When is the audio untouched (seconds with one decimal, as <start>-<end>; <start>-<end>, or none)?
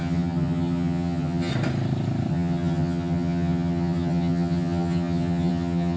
1.5-2.3